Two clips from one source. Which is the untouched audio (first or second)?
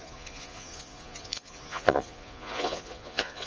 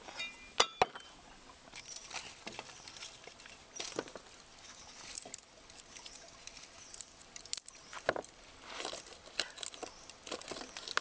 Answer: second